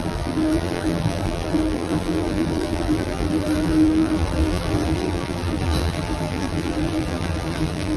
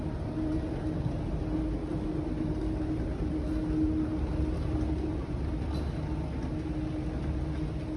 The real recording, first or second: second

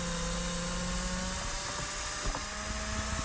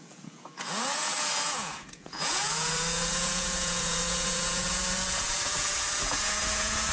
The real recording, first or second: first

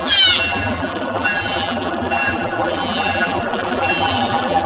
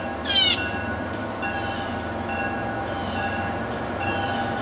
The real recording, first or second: second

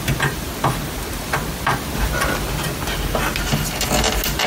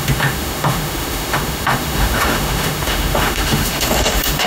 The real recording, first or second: first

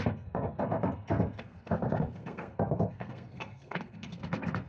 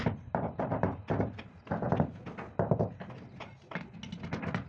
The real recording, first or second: second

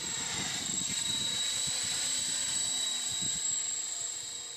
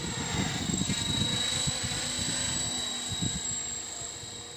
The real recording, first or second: second